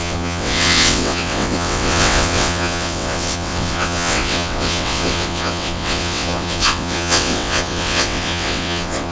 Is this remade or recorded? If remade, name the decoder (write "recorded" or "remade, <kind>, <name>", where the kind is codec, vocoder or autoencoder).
remade, vocoder, WaveNeXt